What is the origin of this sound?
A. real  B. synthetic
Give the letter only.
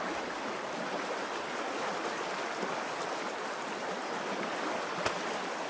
A